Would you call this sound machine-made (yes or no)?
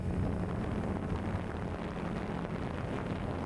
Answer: no